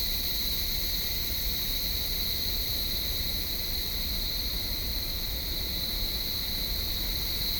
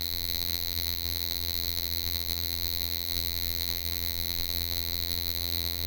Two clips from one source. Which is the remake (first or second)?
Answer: second